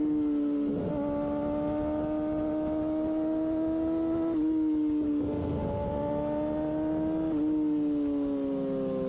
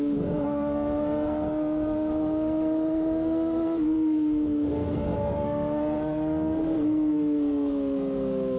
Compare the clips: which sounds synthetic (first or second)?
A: second